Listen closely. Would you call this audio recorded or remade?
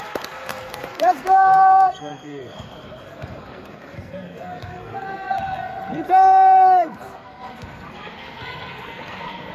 remade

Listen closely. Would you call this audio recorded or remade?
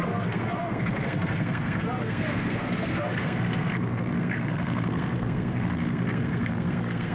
remade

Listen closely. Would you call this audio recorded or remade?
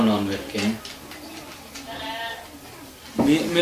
recorded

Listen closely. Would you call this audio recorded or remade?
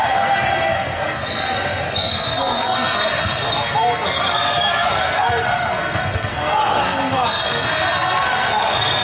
remade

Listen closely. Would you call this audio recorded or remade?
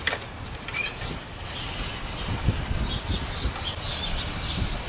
recorded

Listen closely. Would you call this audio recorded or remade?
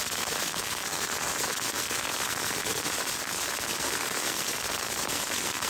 remade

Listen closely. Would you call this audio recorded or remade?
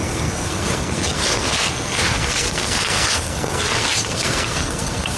remade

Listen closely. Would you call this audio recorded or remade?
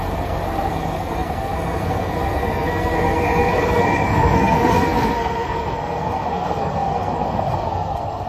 remade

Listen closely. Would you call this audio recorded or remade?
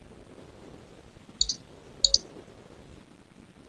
recorded